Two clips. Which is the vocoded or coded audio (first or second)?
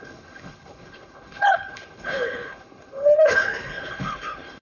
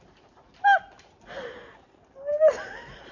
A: first